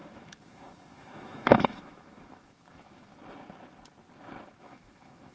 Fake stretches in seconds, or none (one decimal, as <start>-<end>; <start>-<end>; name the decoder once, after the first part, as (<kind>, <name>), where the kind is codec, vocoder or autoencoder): 0.0-3.1 (autoencoder, DAC-VAE); 4.6-5.3